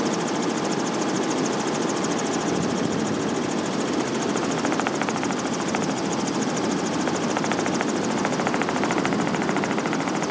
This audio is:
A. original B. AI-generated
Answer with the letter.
A